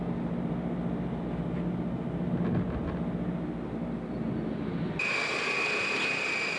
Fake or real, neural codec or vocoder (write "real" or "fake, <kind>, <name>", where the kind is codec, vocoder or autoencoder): real